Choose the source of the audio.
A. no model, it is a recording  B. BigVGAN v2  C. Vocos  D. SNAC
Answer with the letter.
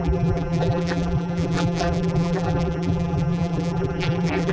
B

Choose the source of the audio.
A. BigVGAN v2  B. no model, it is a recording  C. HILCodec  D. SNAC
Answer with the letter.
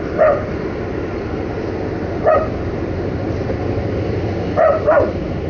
B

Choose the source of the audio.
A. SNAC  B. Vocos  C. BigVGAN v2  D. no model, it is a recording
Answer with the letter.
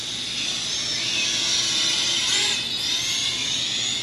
D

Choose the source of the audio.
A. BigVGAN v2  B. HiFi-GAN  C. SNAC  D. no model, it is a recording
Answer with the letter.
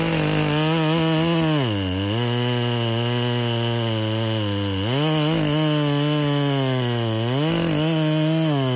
D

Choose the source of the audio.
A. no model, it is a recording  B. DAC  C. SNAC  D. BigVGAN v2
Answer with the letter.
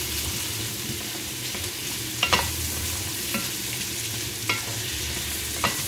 D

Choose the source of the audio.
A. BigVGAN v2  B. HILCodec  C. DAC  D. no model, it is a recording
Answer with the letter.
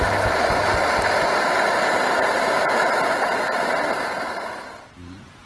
A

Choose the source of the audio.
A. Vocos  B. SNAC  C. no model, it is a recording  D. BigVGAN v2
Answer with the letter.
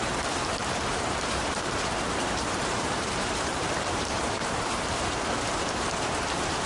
D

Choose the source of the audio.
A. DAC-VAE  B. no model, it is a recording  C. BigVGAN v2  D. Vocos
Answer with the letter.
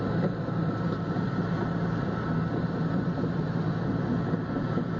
C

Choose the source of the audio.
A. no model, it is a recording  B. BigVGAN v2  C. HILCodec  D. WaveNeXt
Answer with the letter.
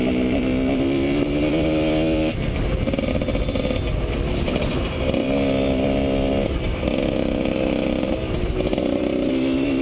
A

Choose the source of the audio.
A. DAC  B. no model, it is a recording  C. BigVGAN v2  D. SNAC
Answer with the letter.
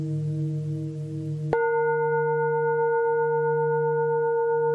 B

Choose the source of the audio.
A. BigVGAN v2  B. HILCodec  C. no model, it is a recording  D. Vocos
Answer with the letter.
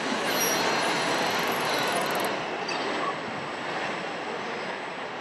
C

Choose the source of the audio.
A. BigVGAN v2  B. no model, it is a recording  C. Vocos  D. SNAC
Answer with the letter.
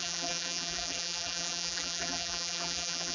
A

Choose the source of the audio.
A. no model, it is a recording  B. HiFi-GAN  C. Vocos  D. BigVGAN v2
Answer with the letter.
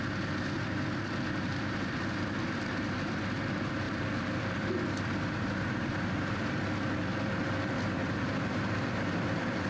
D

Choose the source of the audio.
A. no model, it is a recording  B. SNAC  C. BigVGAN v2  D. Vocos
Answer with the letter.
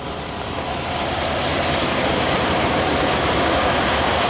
C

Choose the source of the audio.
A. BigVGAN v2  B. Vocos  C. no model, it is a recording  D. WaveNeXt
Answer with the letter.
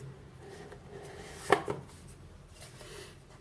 C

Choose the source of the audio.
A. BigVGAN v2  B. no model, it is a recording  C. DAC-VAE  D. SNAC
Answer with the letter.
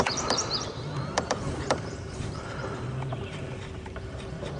A